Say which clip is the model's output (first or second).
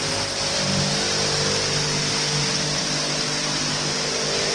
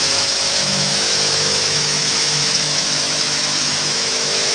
second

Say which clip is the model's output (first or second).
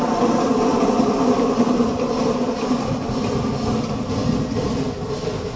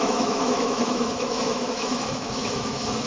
second